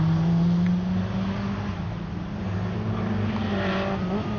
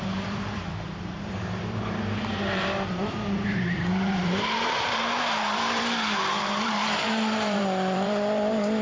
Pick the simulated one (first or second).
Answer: second